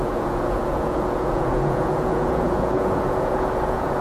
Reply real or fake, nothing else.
fake